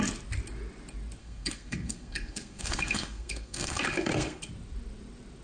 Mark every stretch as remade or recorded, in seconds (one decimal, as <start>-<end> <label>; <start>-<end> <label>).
0.0-1.2 recorded; 1.2-4.4 remade; 4.4-5.4 recorded

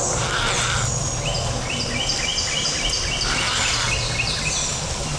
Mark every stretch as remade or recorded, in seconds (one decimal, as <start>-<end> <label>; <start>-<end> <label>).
0.0-5.2 recorded

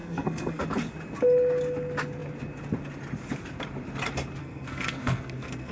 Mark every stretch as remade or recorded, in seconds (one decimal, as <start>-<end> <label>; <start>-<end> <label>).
0.0-0.6 remade; 0.6-4.4 recorded; 4.4-5.7 remade